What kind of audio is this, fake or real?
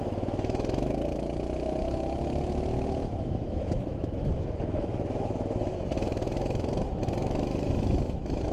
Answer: fake